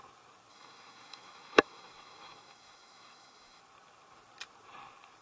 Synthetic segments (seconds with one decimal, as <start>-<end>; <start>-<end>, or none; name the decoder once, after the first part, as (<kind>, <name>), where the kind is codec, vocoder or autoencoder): 0.5-3.6 (autoencoder, DAC-VAE)